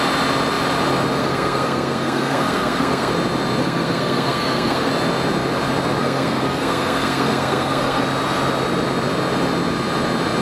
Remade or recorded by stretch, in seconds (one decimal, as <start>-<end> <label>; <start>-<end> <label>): 0.0-1.2 recorded; 1.2-3.1 remade; 3.1-3.6 recorded; 3.6-4.9 remade; 4.9-6.0 recorded; 6.0-8.0 remade; 8.0-10.4 recorded